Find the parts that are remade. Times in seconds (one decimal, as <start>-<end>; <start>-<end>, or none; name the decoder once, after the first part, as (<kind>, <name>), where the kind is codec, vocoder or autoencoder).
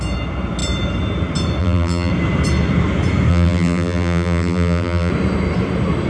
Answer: 1.6-2.1 (vocoder, BigVGAN v2); 3.3-5.1